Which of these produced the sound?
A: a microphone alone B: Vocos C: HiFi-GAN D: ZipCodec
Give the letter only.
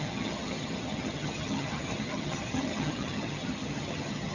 C